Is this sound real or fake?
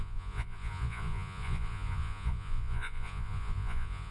fake